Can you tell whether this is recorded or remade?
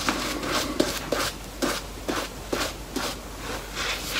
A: recorded